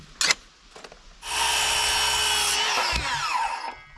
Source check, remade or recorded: recorded